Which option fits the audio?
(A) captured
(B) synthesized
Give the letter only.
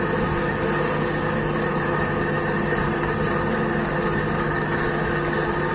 A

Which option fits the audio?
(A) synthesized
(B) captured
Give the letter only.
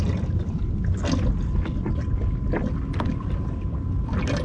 B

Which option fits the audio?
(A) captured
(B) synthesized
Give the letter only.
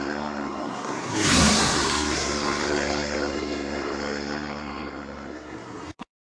B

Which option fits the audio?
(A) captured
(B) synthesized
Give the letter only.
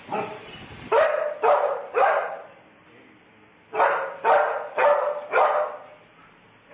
A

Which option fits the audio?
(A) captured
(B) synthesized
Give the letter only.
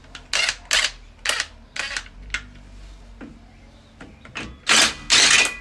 A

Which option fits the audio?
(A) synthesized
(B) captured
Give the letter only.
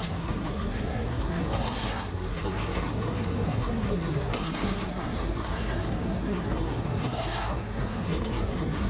A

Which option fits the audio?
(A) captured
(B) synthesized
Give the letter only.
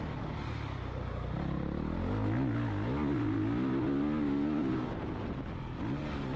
A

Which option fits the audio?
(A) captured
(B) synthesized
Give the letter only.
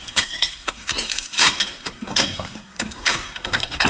B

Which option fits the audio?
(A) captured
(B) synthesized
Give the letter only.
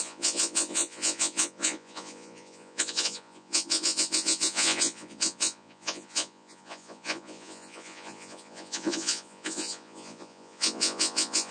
B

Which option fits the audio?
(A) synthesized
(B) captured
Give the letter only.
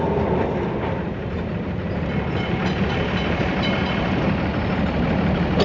B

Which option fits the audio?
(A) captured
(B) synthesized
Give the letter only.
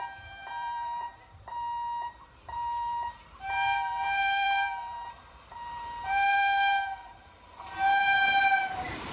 B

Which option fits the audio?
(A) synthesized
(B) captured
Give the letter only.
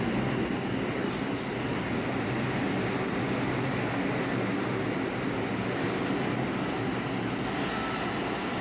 B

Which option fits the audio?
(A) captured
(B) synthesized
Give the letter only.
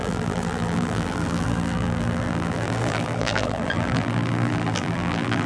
B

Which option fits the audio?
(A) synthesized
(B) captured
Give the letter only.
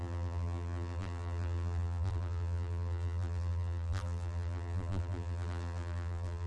A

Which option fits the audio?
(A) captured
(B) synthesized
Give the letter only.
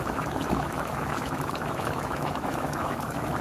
B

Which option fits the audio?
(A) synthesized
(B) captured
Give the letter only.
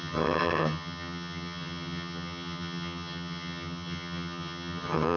A